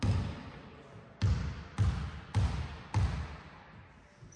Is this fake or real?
real